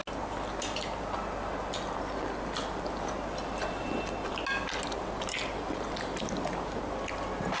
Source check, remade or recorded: recorded